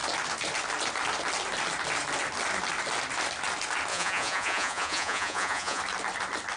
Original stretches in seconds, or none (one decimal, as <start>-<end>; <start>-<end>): 0.0-3.9; 5.8-6.6